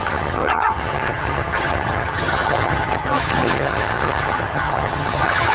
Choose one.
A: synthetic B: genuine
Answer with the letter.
A